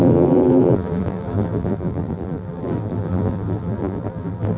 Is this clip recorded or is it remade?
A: remade